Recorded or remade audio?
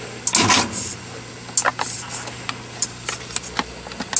recorded